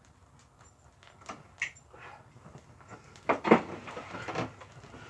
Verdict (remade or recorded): recorded